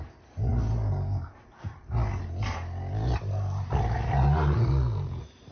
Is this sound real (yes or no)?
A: yes